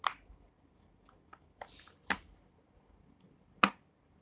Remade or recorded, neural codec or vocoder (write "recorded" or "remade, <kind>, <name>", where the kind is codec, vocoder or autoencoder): recorded